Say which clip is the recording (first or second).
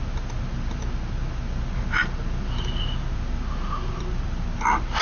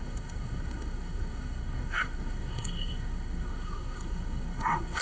first